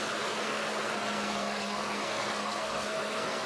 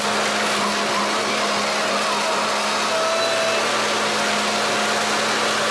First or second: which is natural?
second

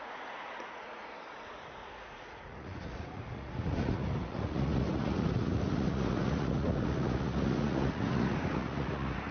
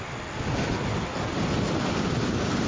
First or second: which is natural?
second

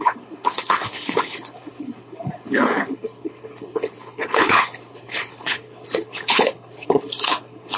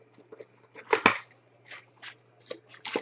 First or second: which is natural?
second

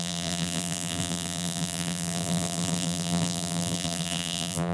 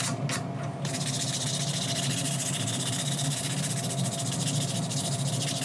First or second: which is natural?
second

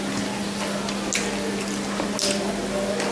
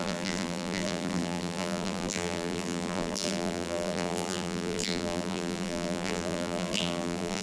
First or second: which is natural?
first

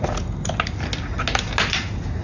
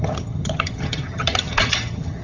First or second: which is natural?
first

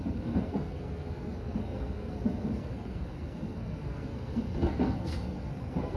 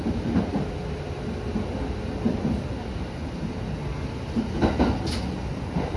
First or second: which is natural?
second